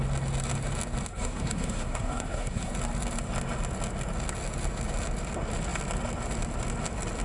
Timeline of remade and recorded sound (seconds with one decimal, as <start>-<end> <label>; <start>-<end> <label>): 0.0-1.1 recorded; 1.1-2.7 remade; 2.7-7.2 recorded